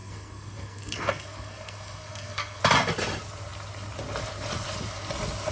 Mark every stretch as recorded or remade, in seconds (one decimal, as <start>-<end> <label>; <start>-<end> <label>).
0.0-2.6 remade; 2.6-5.5 recorded

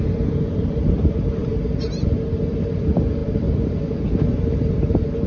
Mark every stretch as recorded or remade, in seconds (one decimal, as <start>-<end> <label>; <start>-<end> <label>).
0.0-5.3 recorded

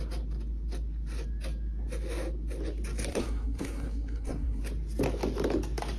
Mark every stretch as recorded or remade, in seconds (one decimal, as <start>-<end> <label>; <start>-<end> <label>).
0.0-3.1 recorded; 3.1-4.6 remade; 4.6-6.0 recorded

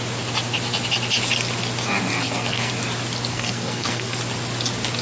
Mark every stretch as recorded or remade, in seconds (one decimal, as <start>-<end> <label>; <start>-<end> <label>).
0.0-2.1 recorded; 2.1-2.7 remade; 2.7-3.3 recorded; 3.3-4.2 remade; 4.2-5.0 recorded

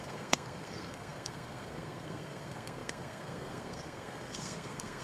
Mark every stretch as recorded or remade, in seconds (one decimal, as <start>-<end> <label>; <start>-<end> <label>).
0.0-5.0 remade

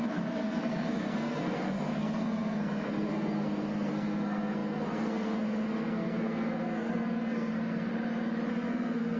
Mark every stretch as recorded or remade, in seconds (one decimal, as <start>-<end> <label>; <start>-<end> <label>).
0.0-7.9 remade; 7.9-8.5 recorded; 8.5-9.2 remade

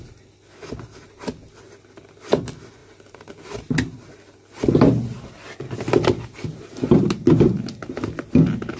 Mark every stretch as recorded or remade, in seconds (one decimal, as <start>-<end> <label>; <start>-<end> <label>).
0.0-8.8 recorded

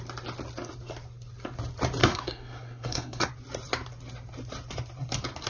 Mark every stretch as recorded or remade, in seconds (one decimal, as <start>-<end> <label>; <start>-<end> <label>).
0.0-2.0 recorded; 2.0-3.3 remade; 3.3-5.5 recorded